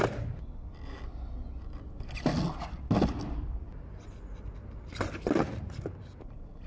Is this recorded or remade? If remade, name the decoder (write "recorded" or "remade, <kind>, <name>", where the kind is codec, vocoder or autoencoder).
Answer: recorded